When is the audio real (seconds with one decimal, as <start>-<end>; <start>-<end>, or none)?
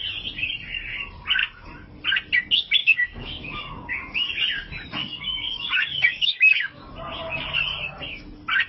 0.0-2.8; 4.3-5.0; 6.8-8.7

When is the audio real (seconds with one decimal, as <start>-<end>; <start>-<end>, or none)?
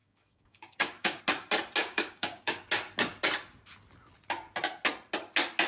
1.2-1.8; 2.6-5.7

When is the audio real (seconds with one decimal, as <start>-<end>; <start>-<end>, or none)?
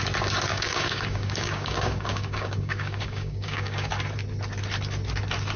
0.0-0.5; 3.9-5.6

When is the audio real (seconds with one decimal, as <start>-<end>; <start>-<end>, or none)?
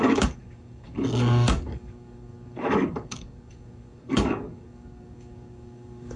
none